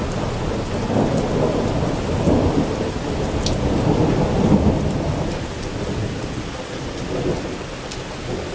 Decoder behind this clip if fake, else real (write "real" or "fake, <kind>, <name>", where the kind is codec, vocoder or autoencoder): real